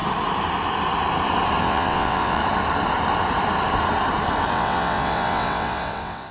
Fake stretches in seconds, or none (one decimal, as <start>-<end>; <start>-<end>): 1.6-2.4; 4.5-6.3